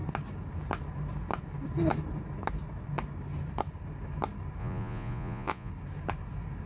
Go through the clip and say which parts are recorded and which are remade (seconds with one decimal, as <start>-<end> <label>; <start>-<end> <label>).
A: 0.0-4.6 recorded; 4.6-5.7 remade; 5.7-6.7 recorded